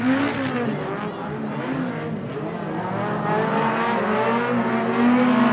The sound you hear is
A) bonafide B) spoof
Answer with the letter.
A